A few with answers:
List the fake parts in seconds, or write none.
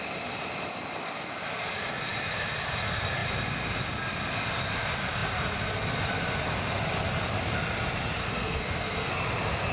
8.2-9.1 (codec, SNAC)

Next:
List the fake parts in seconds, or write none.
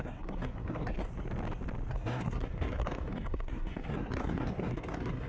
0.0-1.1 (codec, SNAC); 1.9-5.3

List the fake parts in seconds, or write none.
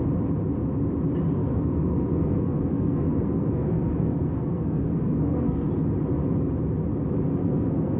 1.4-5.7 (codec, SNAC); 7.4-8.0